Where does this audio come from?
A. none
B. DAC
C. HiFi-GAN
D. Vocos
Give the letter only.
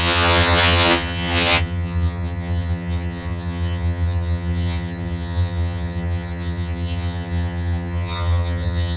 C